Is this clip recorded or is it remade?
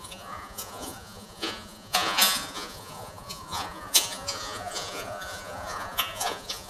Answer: remade